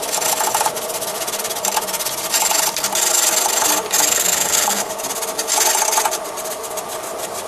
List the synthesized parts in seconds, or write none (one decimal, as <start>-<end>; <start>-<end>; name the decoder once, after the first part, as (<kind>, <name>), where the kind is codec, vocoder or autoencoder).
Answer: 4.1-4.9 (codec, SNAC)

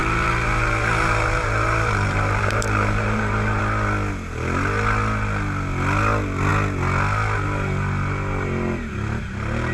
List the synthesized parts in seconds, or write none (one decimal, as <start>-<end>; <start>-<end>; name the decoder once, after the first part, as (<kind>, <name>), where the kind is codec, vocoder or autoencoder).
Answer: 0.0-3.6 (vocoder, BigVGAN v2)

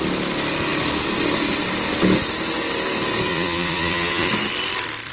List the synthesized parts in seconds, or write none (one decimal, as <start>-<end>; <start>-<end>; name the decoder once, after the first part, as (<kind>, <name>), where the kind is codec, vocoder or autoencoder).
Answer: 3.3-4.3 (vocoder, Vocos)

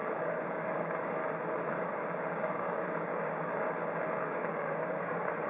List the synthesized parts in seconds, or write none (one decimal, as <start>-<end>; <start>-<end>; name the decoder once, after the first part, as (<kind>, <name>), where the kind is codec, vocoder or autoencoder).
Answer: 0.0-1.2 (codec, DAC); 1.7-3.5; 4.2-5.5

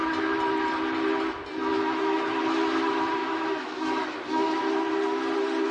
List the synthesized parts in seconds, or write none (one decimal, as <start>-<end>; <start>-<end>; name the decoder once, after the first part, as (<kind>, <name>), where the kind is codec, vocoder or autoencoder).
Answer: 1.6-2.4 (autoencoder, DAC-VAE); 3.2-4.6

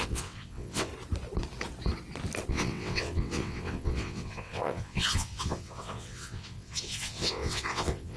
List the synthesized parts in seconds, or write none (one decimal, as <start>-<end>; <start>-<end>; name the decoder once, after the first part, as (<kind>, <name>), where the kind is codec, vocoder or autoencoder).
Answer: 0.0-0.9 (vocoder, WaveNeXt); 2.5-8.2